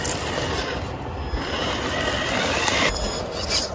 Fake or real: real